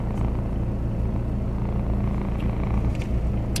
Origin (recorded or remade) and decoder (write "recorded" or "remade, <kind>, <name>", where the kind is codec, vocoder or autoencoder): recorded